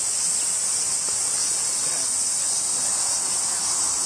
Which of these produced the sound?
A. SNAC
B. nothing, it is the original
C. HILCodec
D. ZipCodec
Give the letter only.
B